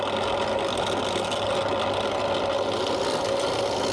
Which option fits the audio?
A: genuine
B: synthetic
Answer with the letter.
A